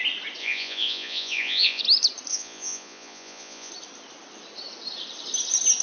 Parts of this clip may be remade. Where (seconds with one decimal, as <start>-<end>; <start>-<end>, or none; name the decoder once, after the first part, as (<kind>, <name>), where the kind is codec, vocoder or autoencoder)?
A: 0.4-1.8 (vocoder, Vocos); 2.3-3.7